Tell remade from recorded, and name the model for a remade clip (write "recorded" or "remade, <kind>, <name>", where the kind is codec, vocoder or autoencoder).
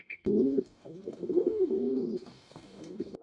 remade, codec, DAC